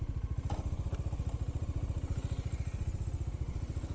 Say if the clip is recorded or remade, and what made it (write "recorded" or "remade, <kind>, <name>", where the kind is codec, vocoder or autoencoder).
recorded